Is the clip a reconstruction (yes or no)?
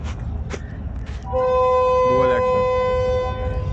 no